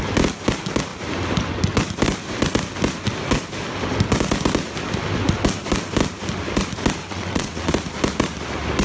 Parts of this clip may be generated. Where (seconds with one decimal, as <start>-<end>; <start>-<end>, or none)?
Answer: 7.0-7.7